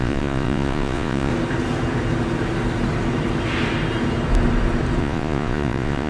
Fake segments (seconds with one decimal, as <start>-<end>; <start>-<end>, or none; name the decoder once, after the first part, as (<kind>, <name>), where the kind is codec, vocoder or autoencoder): 0.0-1.3 (vocoder, Vocos); 5.0-6.1